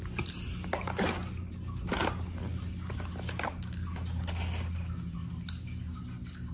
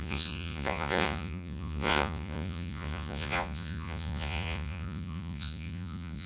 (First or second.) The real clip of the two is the first